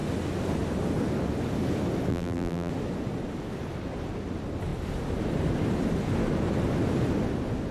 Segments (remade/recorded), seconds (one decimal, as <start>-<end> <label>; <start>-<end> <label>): 0.0-2.1 recorded; 2.1-2.7 remade; 2.7-7.7 recorded